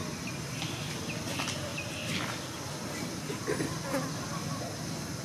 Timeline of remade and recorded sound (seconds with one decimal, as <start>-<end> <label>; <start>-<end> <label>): 0.0-5.2 recorded